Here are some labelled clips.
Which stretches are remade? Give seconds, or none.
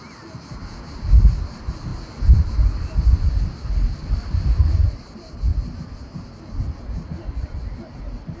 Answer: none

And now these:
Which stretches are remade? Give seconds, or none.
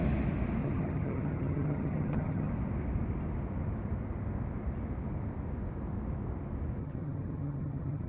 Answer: 0.6-2.5 (vocoder, HiFi-GAN); 6.8-8.1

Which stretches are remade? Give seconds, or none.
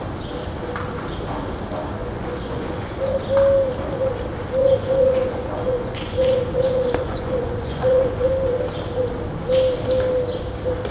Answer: 2.0-3.0 (vocoder, Vocos); 4.6-8.6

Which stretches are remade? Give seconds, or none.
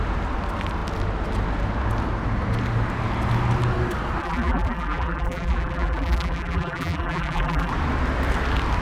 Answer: 4.2-7.7 (vocoder, BigVGAN v2)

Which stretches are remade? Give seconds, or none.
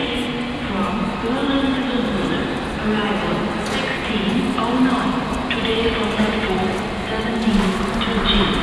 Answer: none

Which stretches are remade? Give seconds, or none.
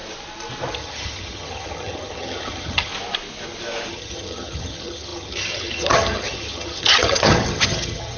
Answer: 0.7-2.9 (vocoder, HiFi-GAN); 3.9-8.2